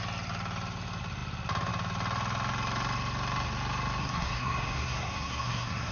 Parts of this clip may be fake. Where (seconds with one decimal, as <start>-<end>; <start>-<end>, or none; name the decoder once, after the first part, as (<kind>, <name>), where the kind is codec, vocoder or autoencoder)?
4.0-5.9 (codec, SNAC)